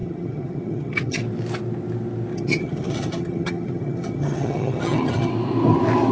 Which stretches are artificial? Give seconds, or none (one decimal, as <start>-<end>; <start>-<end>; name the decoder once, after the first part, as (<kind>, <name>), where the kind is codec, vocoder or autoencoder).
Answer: 0.0-1.2 (vocoder, HiFi-GAN); 2.3-5.3